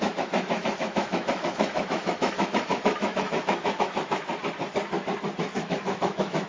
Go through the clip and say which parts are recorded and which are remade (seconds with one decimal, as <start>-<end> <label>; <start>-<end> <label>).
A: 0.0-4.3 remade; 4.3-5.4 recorded; 5.4-6.5 remade

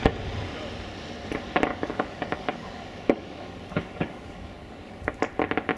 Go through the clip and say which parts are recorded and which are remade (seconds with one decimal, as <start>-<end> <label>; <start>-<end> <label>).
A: 0.0-1.7 recorded; 1.7-5.2 remade; 5.2-5.8 recorded